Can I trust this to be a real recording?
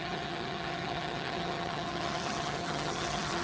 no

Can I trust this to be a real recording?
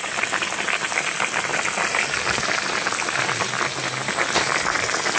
yes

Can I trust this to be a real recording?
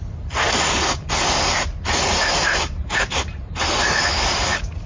yes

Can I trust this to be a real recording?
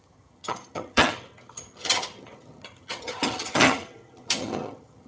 no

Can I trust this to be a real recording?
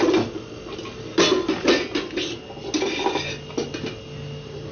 yes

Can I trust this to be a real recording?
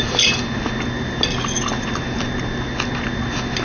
yes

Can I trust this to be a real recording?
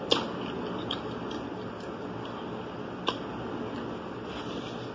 yes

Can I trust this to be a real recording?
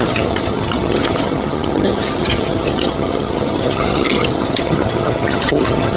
no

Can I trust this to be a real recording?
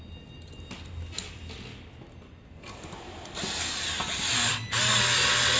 yes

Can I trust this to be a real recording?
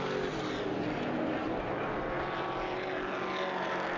yes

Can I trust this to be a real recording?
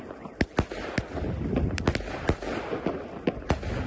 yes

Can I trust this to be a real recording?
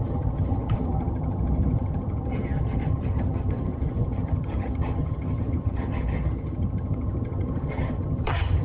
no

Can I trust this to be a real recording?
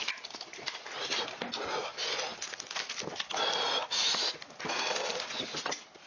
yes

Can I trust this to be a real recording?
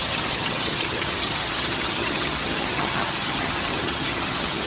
no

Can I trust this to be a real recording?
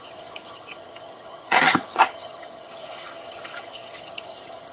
no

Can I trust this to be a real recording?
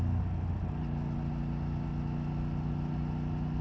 yes